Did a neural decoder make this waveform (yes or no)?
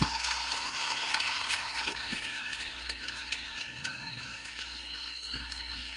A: yes